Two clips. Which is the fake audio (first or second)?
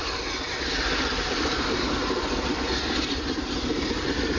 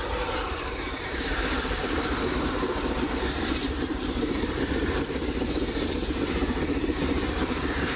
second